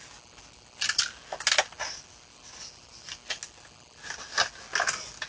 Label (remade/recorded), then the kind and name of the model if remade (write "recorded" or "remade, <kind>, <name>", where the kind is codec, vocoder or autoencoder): recorded